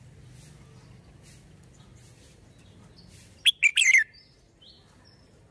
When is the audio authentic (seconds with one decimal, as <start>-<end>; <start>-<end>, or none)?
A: 0.0-5.5